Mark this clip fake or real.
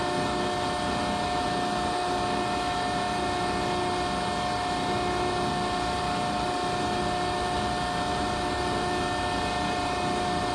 real